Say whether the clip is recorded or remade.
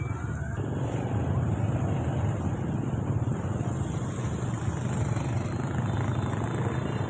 recorded